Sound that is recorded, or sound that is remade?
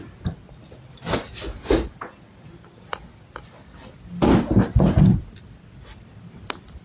recorded